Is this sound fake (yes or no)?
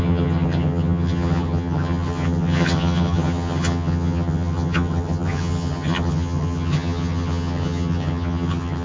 yes